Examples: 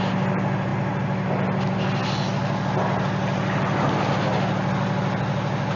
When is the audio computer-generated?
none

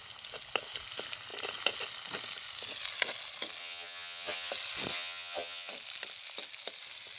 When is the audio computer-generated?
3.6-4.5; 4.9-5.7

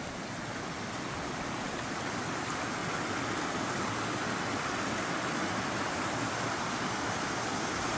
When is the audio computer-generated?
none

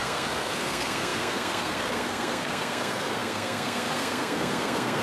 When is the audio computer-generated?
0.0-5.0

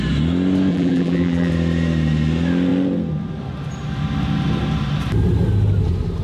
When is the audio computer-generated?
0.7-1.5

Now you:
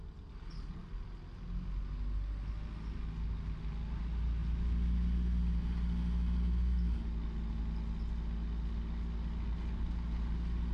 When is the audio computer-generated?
none

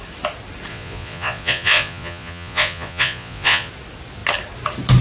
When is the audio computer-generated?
0.7-3.7

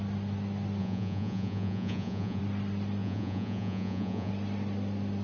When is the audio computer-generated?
0.8-2.4; 3.0-4.3